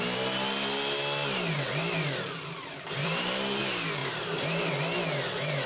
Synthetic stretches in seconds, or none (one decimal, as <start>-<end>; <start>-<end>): 3.0-3.6; 4.0-4.7

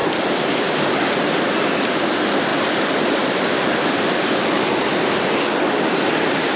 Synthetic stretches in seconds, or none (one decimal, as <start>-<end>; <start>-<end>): 0.0-1.4; 2.5-6.6

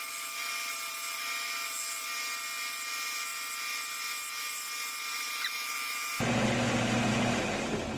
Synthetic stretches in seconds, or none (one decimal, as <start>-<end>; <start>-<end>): none

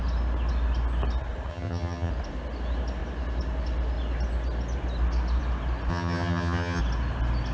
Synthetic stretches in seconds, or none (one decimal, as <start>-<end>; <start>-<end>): 1.5-2.1; 5.9-6.8

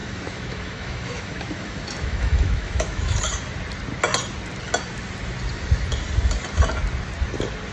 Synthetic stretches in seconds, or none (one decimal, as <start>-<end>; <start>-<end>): 0.0-3.2

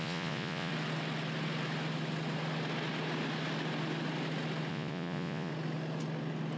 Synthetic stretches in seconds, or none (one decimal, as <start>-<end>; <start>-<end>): 0.0-0.7; 4.7-5.5